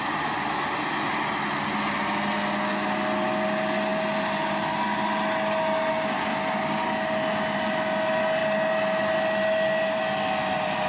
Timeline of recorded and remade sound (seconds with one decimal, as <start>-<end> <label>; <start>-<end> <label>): 0.0-10.9 recorded